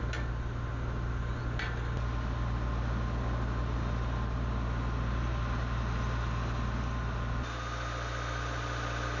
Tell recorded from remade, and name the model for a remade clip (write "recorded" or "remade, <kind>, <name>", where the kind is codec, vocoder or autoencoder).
recorded